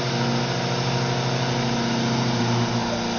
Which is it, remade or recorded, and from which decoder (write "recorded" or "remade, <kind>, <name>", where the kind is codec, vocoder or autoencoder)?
recorded